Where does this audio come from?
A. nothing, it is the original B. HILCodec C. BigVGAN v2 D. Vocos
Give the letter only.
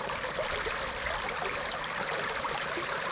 A